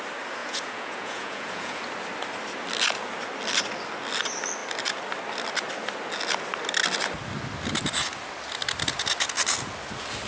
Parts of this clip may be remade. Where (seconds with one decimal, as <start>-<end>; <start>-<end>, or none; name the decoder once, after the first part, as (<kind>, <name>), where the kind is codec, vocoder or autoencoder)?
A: 0.4-1.8 (vocoder, Vocos)